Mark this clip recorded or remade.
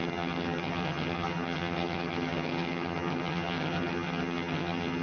remade